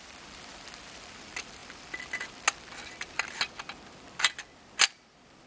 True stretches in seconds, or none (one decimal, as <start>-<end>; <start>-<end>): 0.0-5.5